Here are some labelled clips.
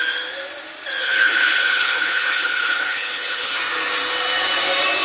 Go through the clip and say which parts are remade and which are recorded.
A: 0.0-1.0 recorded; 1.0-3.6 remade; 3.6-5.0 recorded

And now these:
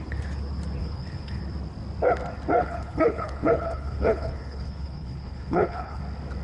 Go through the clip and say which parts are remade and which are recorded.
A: 0.0-0.8 recorded; 0.8-1.4 remade; 1.4-2.6 recorded; 2.6-6.0 remade; 6.0-6.4 recorded

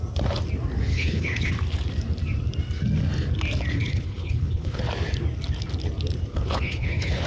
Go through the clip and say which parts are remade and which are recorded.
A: 0.0-0.9 recorded; 0.9-1.5 remade; 1.5-3.7 recorded; 3.7-4.8 remade; 4.8-6.3 recorded; 6.3-7.3 remade

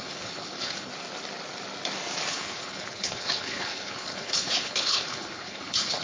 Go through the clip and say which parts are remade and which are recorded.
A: 0.0-0.9 remade; 0.9-2.3 recorded; 2.3-6.0 remade

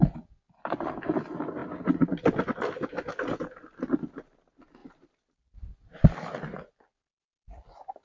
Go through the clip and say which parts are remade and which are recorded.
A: 0.0-8.0 recorded

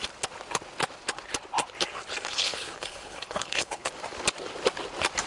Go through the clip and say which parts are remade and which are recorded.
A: 0.0-2.3 recorded; 2.3-3.9 remade; 3.9-5.3 recorded